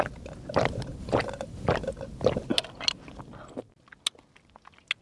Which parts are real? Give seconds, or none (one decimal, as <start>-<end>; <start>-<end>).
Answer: 0.0-0.9; 1.7-5.0